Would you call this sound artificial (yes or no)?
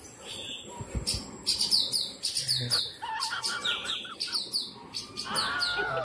no